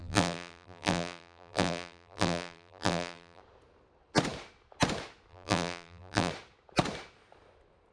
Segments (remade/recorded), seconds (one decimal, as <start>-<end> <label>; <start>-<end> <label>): 0.0-3.4 remade; 3.4-5.3 recorded; 5.3-6.3 remade; 6.3-7.9 recorded